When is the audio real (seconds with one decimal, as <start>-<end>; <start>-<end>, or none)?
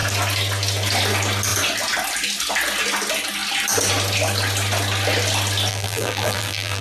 0.0-5.7